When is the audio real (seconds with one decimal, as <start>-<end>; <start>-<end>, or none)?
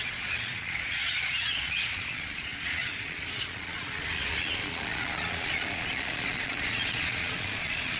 none